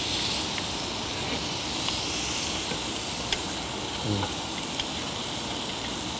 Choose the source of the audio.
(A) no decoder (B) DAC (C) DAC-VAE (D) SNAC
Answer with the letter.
A